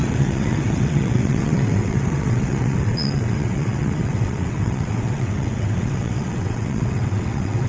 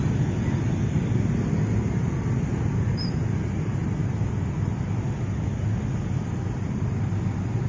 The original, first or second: second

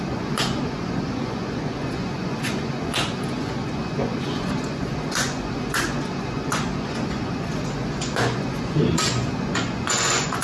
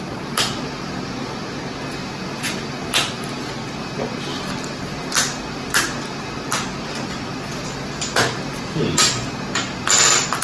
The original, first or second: second